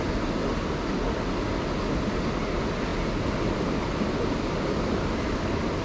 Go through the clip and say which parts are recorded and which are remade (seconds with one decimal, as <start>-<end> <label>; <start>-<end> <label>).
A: 0.0-5.8 recorded